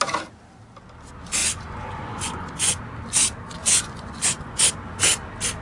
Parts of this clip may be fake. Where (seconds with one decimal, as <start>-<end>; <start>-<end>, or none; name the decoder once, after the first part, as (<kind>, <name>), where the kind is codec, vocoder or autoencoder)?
1.4-2.8 (vocoder, Vocos); 3.6-4.6